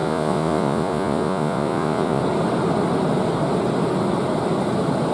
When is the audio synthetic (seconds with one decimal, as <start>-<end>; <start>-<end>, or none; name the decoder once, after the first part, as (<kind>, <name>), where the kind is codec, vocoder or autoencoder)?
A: 0.0-2.2 (vocoder, Vocos)